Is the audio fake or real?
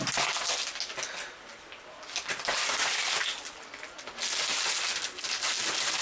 real